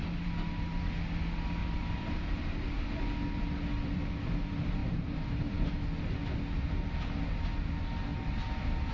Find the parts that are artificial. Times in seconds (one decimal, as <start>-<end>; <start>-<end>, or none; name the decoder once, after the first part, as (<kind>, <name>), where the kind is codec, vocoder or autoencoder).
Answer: 0.0-0.8 (vocoder, BigVGAN v2); 1.6-2.8; 4.8-5.8